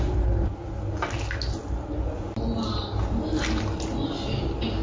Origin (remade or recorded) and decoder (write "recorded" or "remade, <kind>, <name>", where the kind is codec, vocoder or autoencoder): recorded